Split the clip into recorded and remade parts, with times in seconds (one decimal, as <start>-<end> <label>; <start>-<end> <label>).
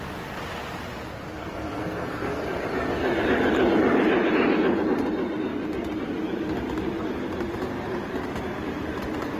0.0-1.4 recorded; 1.4-2.4 remade; 2.4-9.4 recorded